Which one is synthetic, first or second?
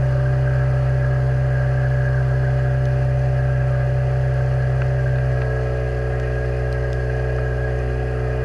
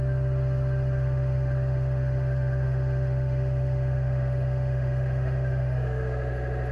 second